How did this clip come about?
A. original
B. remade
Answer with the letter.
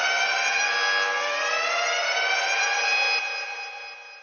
A